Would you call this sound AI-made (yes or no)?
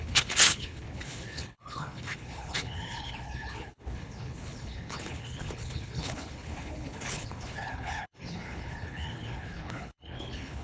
yes